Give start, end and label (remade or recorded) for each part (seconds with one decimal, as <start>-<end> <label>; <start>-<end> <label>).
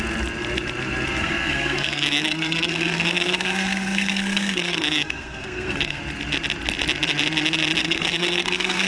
0.0-1.2 recorded; 1.2-6.0 remade; 6.0-7.8 recorded; 7.8-8.9 remade